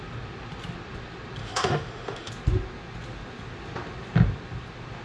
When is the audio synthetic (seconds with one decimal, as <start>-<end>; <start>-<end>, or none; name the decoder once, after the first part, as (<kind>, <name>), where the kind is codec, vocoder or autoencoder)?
1.4-2.3 (autoencoder, DAC-VAE)